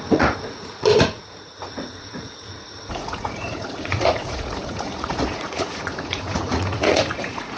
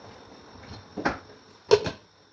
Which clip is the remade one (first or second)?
first